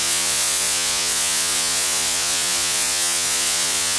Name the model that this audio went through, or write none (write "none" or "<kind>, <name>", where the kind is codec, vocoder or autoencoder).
vocoder, Vocos